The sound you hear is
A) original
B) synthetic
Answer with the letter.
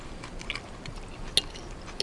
A